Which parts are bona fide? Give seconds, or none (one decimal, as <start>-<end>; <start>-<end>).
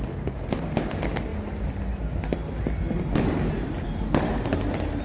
0.0-5.0